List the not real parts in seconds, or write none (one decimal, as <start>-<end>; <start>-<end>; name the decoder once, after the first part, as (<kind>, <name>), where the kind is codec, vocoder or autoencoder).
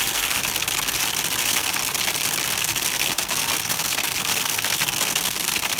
0.0-0.4 (codec, SNAC); 1.4-1.8; 2.5-5.8